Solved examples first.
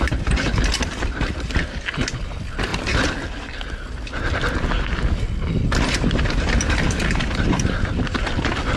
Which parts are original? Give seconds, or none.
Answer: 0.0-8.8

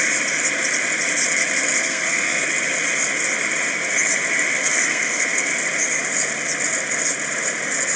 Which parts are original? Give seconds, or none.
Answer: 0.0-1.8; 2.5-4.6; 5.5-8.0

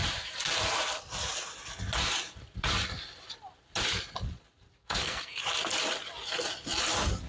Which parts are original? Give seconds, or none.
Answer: 0.0-4.8; 5.4-7.3

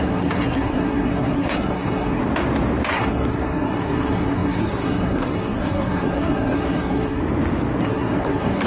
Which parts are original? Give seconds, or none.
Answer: 2.2-2.9; 7.2-7.8

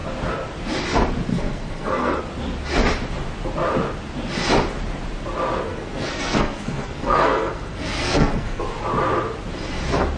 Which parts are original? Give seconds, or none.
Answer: 0.0-1.3; 2.2-5.7; 8.6-10.2

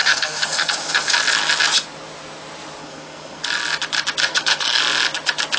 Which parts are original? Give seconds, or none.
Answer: 1.1-2.8; 3.4-4.3; 4.8-5.6

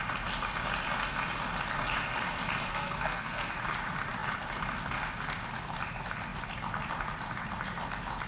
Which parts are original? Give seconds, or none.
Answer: 0.0-2.7; 3.5-8.3

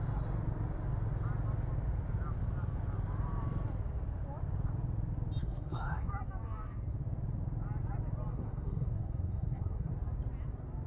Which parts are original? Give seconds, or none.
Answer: 0.0-5.4; 6.1-8.3; 9.9-10.9